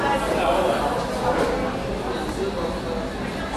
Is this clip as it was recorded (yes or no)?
yes